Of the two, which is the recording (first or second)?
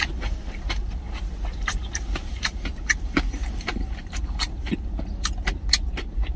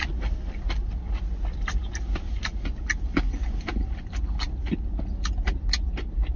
second